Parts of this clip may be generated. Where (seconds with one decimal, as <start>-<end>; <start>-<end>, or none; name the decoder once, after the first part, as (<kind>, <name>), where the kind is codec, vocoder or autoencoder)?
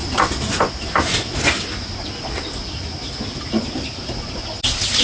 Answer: none